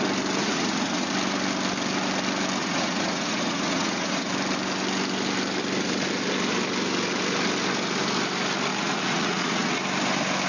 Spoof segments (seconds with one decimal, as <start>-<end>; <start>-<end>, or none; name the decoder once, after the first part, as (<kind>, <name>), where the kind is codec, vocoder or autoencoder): 0.4-1.1 (vocoder, Vocos); 2.6-4.3; 8.7-9.8